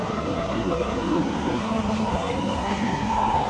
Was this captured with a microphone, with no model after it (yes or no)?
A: no